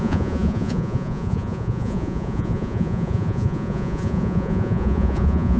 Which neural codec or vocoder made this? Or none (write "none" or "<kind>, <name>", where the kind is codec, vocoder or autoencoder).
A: vocoder, Vocos